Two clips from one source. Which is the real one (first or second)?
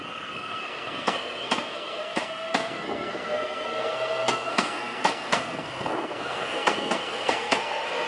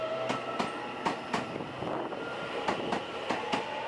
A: second